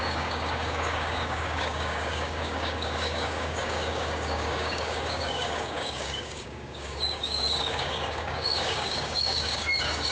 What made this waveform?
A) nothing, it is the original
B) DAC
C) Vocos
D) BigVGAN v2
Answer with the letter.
B